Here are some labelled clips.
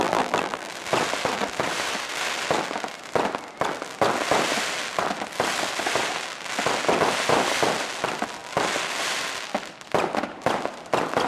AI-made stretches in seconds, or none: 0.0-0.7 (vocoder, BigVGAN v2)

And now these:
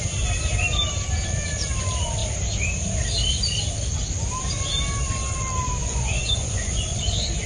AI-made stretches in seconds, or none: 5.8-7.0 (vocoder, Vocos)

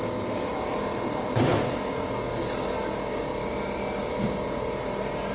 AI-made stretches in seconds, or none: none